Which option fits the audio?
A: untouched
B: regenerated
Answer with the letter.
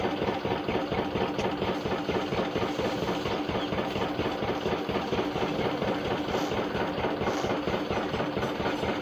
A